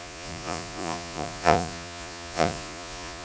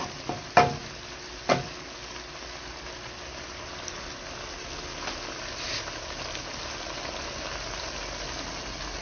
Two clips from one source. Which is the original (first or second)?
second